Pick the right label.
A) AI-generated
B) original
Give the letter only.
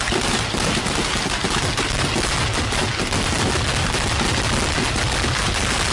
B